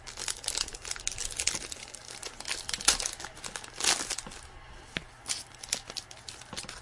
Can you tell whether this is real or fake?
real